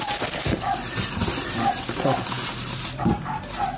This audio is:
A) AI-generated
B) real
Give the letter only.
A